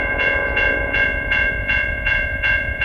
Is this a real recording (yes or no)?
no